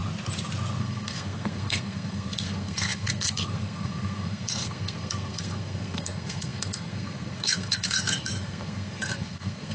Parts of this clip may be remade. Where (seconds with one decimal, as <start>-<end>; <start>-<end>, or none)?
0.8-9.7